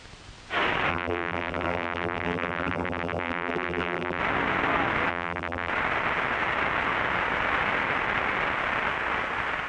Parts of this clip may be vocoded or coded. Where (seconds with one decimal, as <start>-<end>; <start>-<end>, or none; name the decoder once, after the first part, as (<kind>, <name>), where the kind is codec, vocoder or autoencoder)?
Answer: 0.9-4.2 (vocoder, BigVGAN v2); 5.1-5.7